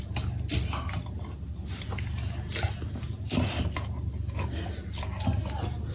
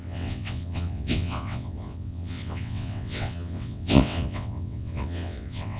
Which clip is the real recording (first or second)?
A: first